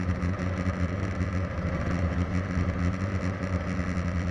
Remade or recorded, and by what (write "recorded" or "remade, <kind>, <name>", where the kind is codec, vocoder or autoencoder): recorded